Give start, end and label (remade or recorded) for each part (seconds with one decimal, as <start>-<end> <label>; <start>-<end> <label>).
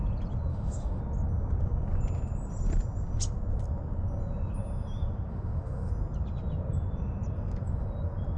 0.0-0.5 recorded; 0.5-1.0 remade; 1.0-5.3 recorded; 5.3-5.9 remade; 5.9-8.4 recorded